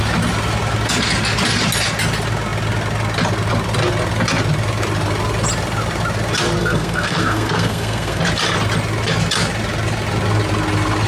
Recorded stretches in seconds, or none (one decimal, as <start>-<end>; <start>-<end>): 0.0-6.6; 8.2-11.1